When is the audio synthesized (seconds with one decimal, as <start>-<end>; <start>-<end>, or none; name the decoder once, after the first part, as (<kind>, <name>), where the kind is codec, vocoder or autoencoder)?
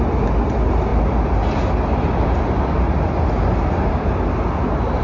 none